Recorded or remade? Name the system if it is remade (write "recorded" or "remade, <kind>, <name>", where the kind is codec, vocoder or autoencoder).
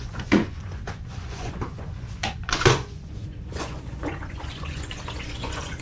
remade, vocoder, Vocos